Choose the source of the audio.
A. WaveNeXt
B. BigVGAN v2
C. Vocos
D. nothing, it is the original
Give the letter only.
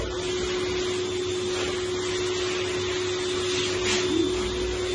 D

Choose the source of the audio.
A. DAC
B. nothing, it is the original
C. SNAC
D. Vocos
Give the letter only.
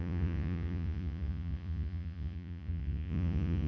D